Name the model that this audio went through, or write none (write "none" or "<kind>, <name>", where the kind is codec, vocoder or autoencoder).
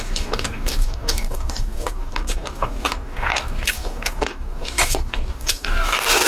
codec, DAC